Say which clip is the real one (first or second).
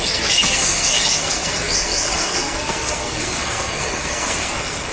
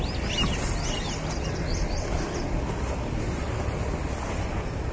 second